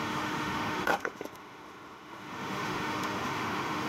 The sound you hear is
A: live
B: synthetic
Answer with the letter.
B